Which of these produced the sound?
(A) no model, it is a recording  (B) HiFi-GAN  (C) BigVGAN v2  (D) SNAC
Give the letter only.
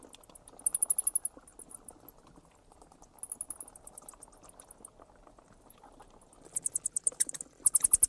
A